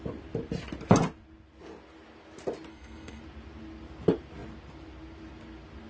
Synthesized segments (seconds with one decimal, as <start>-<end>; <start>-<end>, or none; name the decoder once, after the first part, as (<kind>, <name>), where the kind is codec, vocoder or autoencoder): 2.7-3.2 (codec, SNAC)